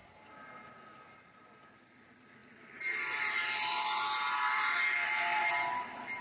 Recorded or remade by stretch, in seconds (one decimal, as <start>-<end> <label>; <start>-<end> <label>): 0.0-6.2 recorded